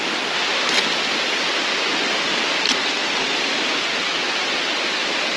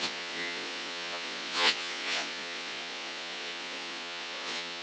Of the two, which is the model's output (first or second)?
second